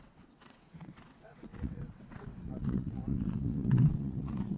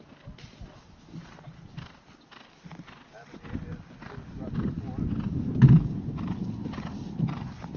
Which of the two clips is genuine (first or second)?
second